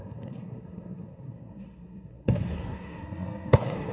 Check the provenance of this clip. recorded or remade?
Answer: remade